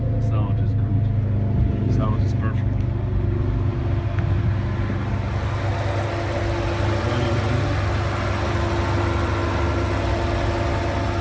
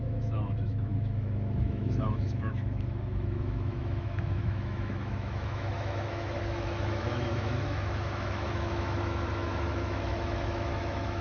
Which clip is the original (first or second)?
first